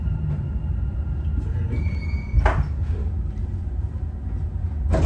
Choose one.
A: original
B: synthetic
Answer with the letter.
A